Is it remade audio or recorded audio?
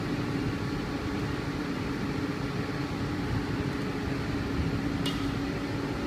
recorded